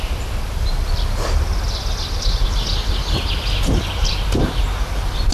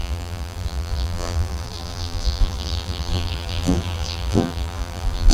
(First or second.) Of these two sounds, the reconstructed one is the second